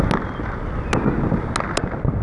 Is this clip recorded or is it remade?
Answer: recorded